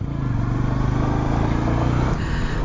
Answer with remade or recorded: recorded